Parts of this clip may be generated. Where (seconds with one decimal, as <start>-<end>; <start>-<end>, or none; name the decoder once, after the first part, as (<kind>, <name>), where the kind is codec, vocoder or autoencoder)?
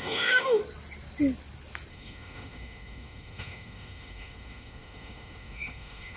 0.0-0.6 (autoencoder, DAC-VAE); 1.9-6.2